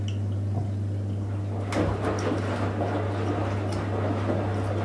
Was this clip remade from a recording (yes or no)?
no